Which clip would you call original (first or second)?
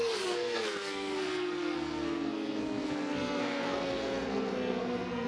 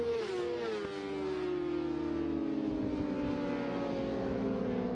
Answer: second